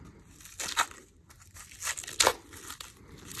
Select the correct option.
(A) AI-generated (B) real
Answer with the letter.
B